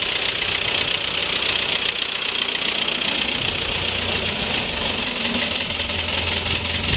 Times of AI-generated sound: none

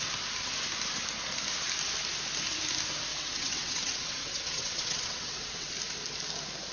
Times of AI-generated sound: 3.1-5.7 (vocoder, WaveNeXt)

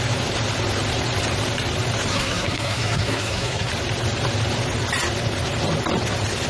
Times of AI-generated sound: 2.1-3.7 (codec, SNAC)